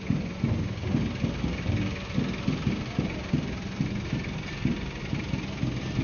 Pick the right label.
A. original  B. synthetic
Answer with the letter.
A